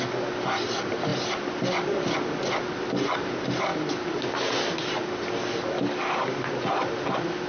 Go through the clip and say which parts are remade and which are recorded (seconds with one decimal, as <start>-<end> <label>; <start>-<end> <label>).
0.0-7.5 recorded